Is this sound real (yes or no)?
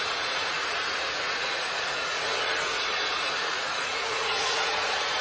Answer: no